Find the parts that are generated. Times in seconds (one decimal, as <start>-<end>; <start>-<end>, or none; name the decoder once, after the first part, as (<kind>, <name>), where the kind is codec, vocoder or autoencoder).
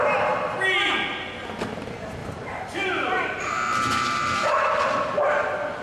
2.2-5.3 (vocoder, BigVGAN v2)